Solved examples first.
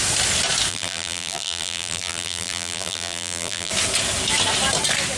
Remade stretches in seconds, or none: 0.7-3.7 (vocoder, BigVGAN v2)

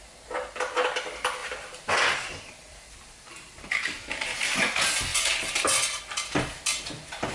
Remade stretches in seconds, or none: 1.4-3.3 (vocoder, BigVGAN v2); 5.1-6.0

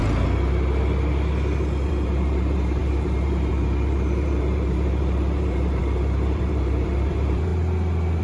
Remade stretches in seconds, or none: 1.9-7.5 (vocoder, BigVGAN v2)

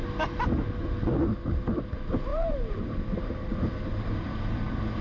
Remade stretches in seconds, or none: 2.3-5.0 (vocoder, BigVGAN v2)

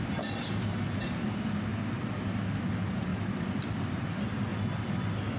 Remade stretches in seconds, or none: 3.1-4.1 (vocoder, BigVGAN v2); 4.5-5.4

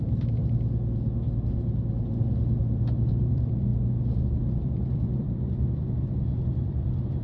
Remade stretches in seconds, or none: 0.0-0.4 (vocoder, BigVGAN v2); 2.6-3.7; 4.3-7.2

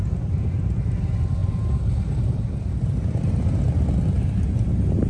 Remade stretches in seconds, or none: 1.4-3.9 (vocoder, BigVGAN v2)

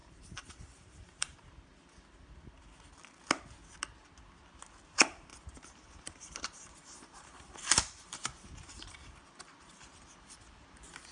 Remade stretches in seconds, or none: 0.0-1.6 (vocoder, BigVGAN v2); 5.3-9.9